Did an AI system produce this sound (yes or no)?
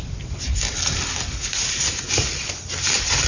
no